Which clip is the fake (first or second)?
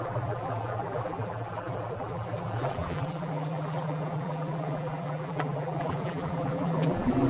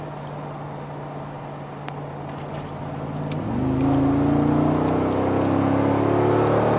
first